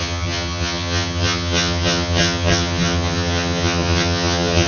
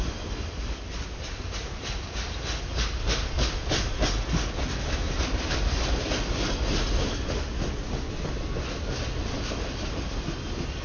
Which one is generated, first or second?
first